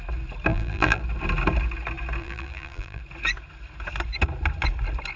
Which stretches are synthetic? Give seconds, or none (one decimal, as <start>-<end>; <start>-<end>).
0.5-1.0; 2.2-3.0